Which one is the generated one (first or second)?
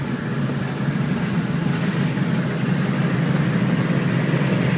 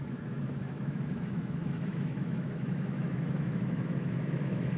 second